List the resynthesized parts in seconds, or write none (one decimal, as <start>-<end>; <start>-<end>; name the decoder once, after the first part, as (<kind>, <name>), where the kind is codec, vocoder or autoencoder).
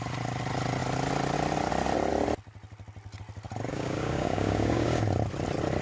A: 3.7-5.0 (codec, DAC)